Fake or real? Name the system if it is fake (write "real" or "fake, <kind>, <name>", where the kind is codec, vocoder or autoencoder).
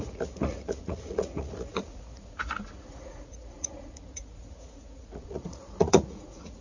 fake, vocoder, Vocos